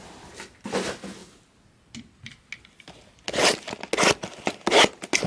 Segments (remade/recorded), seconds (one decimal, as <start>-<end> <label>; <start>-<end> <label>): 0.0-5.3 recorded